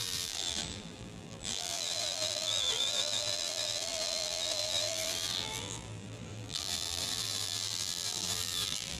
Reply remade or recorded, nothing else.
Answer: remade